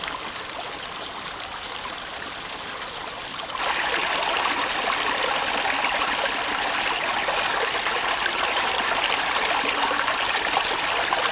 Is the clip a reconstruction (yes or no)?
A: yes